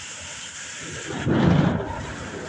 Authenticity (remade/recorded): recorded